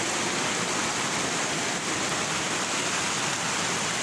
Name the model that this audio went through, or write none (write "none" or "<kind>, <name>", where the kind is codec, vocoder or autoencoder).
none